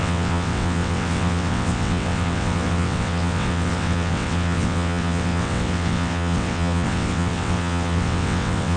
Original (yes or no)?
no